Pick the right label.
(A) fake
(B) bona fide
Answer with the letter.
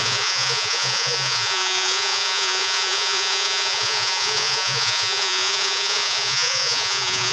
A